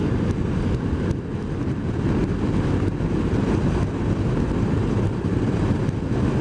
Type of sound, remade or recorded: recorded